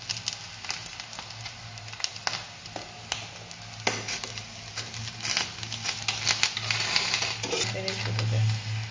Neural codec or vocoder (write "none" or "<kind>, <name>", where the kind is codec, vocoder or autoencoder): none